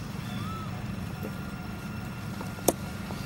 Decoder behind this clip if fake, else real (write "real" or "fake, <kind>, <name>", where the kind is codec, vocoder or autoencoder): fake, vocoder, BigVGAN v2